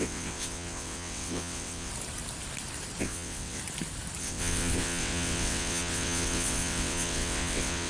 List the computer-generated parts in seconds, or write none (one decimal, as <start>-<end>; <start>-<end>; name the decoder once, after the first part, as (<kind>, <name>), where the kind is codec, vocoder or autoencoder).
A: 0.0-1.9 (vocoder, WaveNeXt); 3.0-3.6; 4.2-7.9